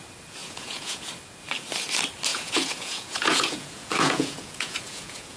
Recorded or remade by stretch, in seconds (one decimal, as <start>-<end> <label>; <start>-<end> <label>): 0.0-0.4 recorded; 0.4-1.1 remade; 1.1-2.3 recorded; 2.3-5.4 remade